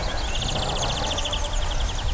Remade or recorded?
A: recorded